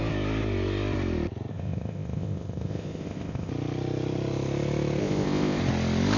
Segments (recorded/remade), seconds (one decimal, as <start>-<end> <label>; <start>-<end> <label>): 0.0-1.5 recorded; 1.5-3.5 remade; 3.5-5.0 recorded; 5.0-5.6 remade; 5.6-6.2 recorded